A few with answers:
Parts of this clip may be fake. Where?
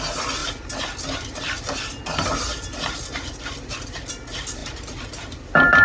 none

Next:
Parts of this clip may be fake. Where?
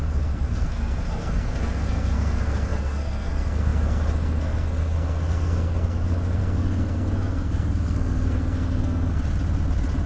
0.0-9.2 (codec, SNAC)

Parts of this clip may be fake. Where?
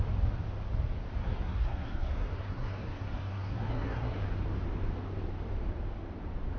1.2-4.2 (codec, SNAC)